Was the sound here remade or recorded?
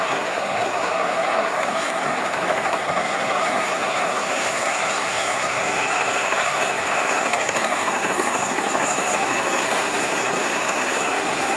remade